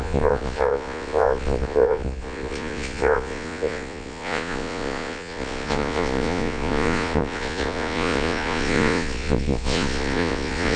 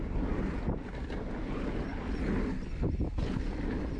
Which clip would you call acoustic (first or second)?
second